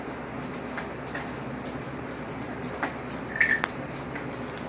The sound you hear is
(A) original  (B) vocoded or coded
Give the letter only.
A